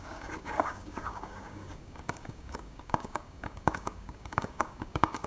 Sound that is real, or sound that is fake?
fake